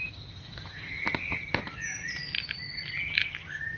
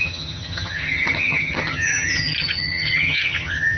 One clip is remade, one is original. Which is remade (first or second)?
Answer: second